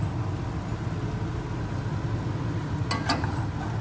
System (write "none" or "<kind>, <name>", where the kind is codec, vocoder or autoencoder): none